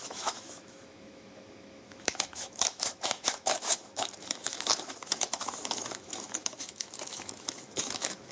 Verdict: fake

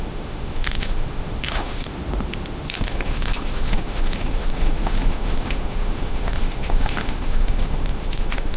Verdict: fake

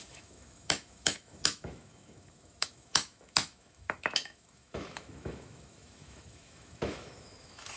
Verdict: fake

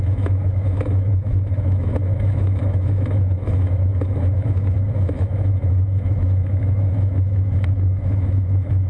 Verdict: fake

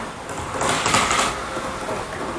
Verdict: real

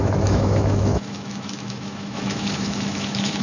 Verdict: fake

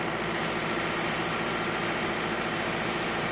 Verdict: real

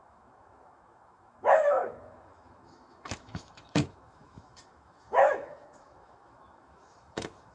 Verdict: fake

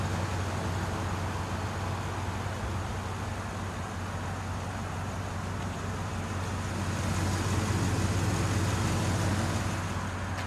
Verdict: real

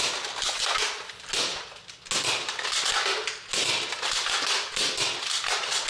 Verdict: real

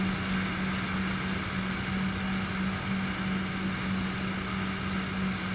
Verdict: real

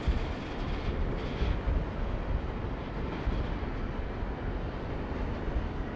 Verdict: real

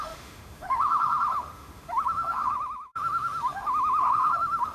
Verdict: fake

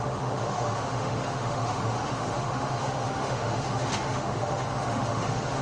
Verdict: fake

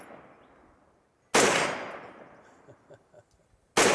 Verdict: real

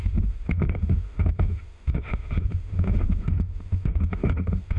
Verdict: fake